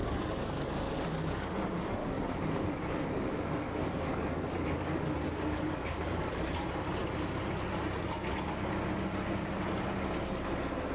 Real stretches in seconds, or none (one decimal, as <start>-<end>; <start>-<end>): 1.5-2.0; 6.4-10.9